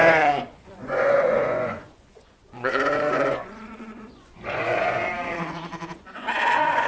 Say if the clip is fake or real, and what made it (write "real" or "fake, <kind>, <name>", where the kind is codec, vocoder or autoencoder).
fake, vocoder, Vocos